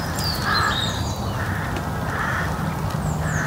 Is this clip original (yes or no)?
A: yes